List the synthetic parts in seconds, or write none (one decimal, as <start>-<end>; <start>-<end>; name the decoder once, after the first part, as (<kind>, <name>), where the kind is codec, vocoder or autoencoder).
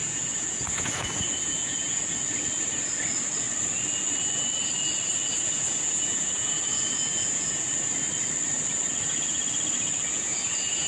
0.0-2.0 (vocoder, Vocos); 5.3-7.7; 10.1-10.9